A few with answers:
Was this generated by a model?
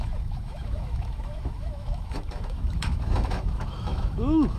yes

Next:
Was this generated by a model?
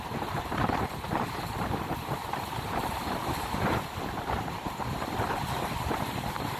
yes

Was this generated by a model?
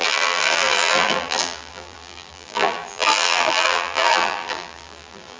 yes